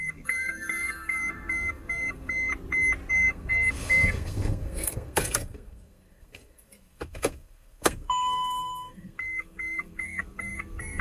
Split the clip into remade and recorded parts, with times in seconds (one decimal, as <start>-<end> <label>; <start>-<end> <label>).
0.0-2.5 remade; 2.5-3.1 recorded; 3.1-11.0 remade